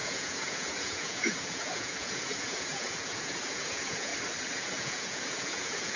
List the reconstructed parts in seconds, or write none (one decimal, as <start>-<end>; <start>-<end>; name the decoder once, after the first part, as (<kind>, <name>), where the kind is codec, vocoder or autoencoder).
0.0-4.1 (vocoder, Vocos); 4.6-6.0